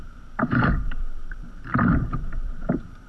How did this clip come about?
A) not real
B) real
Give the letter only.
A